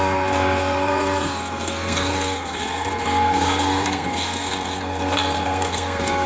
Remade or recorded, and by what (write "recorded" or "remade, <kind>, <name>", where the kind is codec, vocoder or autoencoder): remade, codec, SNAC